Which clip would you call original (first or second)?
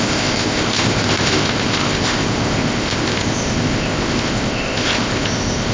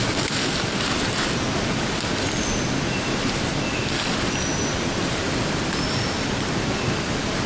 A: second